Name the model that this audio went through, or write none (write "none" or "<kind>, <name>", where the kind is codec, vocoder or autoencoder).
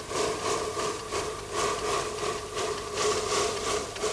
none